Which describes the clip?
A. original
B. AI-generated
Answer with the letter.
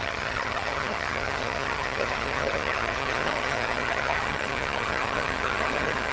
B